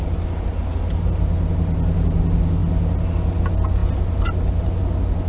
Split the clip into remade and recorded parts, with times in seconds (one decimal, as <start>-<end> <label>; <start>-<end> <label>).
0.0-5.3 recorded